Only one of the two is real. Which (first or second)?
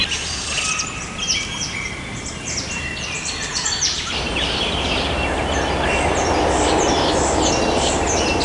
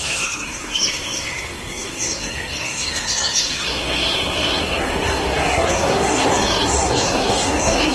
first